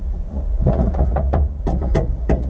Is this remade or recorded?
remade